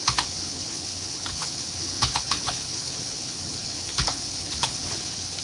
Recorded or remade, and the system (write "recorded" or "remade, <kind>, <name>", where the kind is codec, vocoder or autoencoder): remade, codec, HILCodec